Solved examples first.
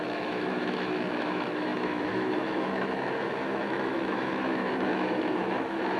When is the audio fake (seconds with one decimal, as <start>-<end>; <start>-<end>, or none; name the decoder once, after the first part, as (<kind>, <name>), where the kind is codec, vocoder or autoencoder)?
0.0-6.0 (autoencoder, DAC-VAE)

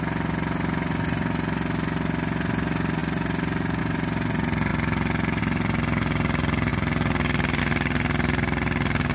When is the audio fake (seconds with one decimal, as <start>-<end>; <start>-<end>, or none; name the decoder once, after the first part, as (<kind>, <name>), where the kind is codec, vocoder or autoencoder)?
none

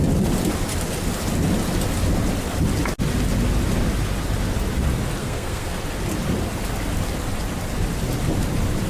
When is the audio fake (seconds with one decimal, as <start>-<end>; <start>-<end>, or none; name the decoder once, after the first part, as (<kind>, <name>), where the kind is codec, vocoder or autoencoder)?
5.2-5.8 (codec, SNAC)

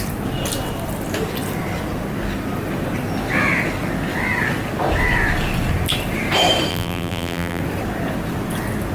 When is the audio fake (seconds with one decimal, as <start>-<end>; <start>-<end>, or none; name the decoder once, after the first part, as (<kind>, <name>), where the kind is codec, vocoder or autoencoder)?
6.7-7.6 (vocoder, BigVGAN v2)

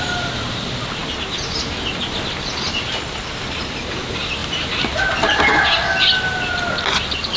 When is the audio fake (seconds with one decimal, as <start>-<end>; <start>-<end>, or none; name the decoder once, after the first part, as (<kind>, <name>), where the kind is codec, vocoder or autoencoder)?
none